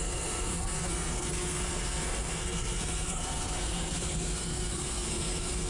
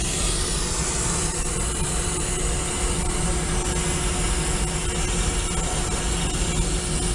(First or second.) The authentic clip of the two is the second